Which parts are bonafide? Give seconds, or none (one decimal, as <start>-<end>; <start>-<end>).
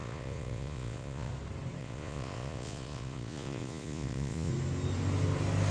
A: 1.3-1.8; 4.5-5.7